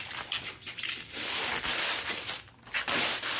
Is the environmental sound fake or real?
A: real